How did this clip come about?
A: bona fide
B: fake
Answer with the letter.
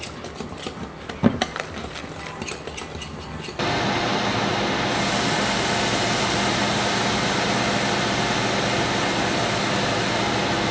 A